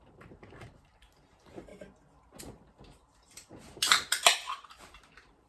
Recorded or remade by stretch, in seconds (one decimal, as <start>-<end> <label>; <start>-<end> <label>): 0.0-1.7 remade; 1.7-2.4 recorded; 2.4-5.5 remade